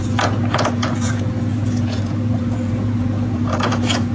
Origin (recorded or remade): remade